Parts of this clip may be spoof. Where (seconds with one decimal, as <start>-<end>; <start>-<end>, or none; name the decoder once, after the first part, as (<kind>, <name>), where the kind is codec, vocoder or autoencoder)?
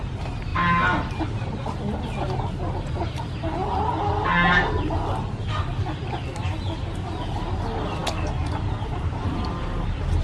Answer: none